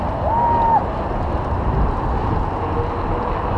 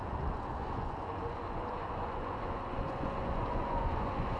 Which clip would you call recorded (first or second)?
first